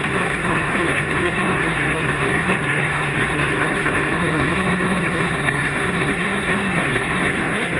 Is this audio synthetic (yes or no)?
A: yes